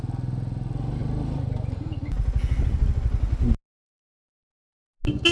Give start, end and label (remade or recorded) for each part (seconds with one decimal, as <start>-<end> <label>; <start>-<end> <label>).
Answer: 0.0-5.3 recorded